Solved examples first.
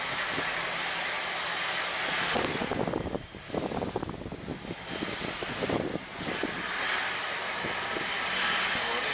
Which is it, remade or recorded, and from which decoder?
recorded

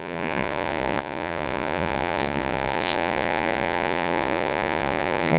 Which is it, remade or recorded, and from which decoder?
remade, vocoder, Vocos